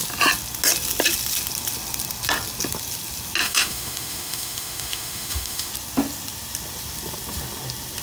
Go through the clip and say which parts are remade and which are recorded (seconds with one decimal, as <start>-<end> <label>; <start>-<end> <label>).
0.0-3.4 recorded; 3.4-5.7 remade; 5.7-8.0 recorded